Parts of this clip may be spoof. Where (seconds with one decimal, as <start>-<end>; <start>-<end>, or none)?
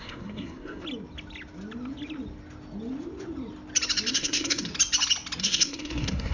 0.0-0.8; 4.1-4.7; 5.4-6.3